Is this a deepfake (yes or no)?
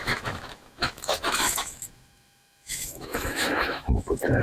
yes